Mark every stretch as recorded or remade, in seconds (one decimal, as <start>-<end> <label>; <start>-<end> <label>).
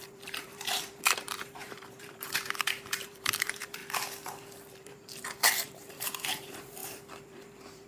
0.0-3.8 remade; 3.8-4.7 recorded; 4.7-7.9 remade